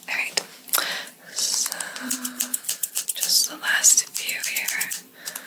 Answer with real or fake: fake